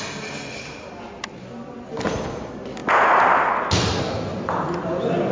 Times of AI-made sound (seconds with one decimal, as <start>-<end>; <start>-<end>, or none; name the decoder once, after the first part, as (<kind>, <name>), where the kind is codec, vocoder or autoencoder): none